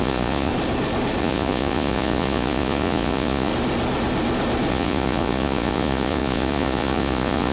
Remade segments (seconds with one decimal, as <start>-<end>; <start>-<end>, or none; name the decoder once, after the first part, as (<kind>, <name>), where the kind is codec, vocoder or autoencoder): 0.0-0.5 (vocoder, Vocos); 1.2-3.5; 4.7-7.5